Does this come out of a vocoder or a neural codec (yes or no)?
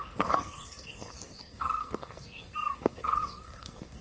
yes